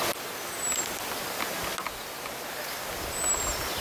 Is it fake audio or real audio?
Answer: real